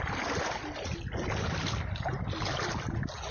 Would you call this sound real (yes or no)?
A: yes